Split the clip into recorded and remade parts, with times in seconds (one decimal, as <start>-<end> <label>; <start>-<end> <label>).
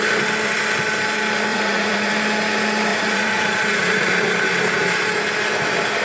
0.0-1.5 recorded; 1.5-2.1 remade; 2.1-2.9 recorded; 2.9-4.1 remade; 4.1-6.0 recorded